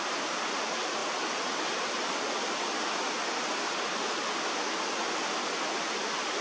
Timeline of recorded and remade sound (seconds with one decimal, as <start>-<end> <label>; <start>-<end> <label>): 0.0-6.4 recorded